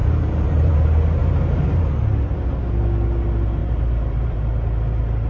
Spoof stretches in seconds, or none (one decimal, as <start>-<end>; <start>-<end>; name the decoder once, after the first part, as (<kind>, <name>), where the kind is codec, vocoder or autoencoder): 0.0-0.7 (vocoder, BigVGAN v2); 1.2-1.9; 3.6-4.4